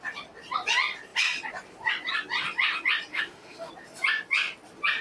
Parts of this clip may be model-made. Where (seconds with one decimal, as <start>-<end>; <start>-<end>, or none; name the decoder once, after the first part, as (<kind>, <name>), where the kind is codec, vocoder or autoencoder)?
3.1-3.7 (autoencoder, DAC-VAE)